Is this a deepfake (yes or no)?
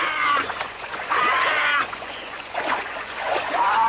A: yes